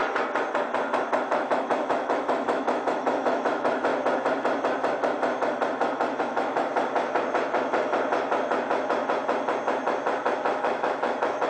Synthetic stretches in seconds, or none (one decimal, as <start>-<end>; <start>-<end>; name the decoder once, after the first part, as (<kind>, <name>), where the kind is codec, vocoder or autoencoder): 1.2-3.9 (autoencoder, DAC-VAE); 6.2-6.7; 10.5-11.5

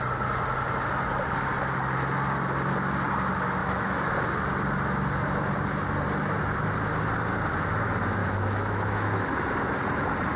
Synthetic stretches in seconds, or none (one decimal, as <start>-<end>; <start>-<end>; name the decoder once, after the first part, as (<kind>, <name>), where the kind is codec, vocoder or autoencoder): 3.6-4.1 (autoencoder, DAC-VAE); 8.2-9.4